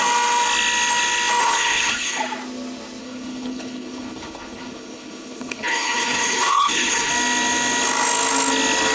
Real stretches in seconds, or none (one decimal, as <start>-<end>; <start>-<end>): 0.0-1.4; 2.2-3.0; 7.1-8.9